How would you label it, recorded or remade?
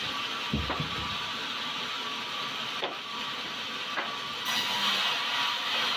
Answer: recorded